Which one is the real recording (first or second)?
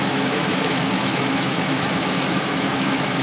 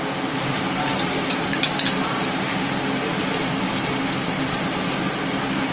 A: second